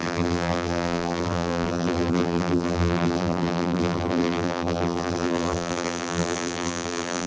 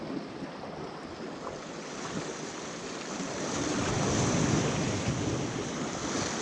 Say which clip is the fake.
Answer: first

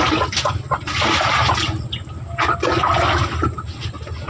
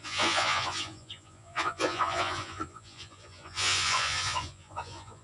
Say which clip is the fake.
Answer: second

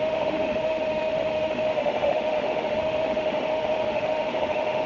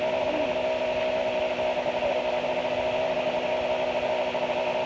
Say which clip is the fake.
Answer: first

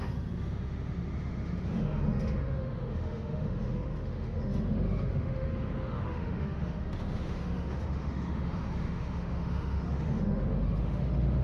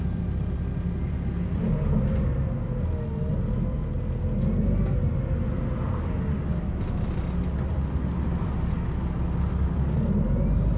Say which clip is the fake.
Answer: first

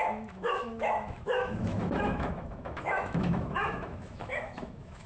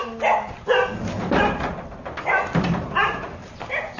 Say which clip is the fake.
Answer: first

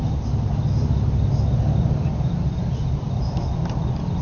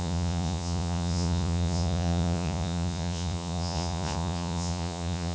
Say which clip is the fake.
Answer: second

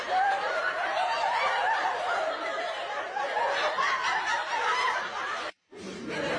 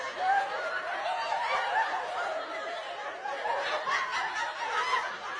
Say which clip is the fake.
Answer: first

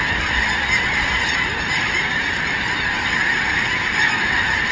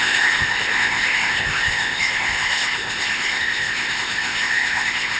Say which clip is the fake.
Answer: second